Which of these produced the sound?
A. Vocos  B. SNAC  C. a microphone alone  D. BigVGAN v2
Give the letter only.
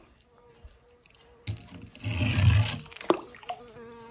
C